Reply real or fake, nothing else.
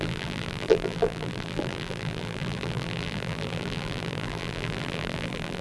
fake